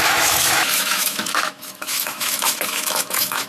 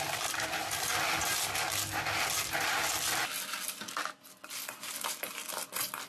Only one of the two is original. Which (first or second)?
second